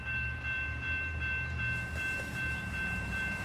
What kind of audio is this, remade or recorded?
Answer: remade